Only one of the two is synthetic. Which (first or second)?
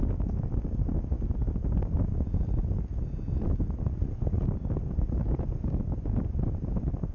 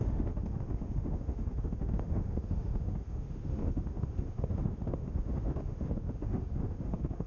second